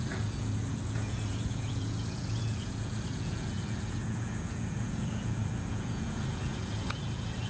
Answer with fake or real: fake